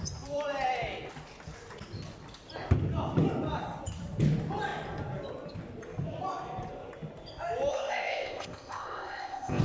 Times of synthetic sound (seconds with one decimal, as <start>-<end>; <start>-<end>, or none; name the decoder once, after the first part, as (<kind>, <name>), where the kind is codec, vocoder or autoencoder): 7.7-9.6 (codec, ZipCodec)